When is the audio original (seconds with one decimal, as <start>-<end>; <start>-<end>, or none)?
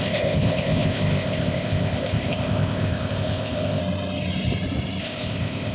3.8-5.0